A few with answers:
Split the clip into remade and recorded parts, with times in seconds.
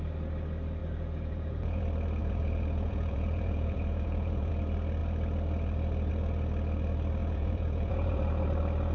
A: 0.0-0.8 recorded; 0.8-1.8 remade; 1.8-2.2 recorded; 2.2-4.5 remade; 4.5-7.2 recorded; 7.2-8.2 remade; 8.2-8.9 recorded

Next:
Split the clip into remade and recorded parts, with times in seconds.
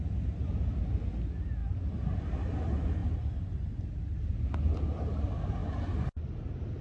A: 0.0-6.8 recorded